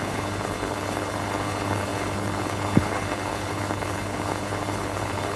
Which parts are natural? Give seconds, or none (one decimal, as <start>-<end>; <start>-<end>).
none